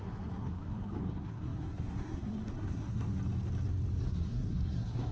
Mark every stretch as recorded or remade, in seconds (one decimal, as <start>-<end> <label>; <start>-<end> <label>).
0.0-3.1 remade; 3.1-4.1 recorded; 4.1-5.1 remade